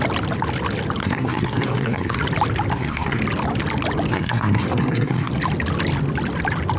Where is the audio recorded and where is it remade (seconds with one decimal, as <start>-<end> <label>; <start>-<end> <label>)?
0.0-1.0 recorded; 1.0-2.2 remade; 2.2-2.7 recorded; 2.7-3.2 remade; 3.2-4.1 recorded; 4.1-5.3 remade; 5.3-6.8 recorded